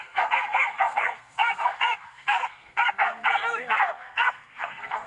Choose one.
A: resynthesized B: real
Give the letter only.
A